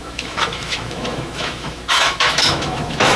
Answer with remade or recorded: remade